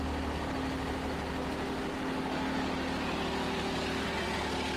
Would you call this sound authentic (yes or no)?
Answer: yes